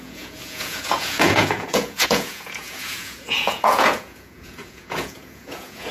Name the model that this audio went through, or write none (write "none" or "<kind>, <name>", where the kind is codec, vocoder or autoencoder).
vocoder, Vocos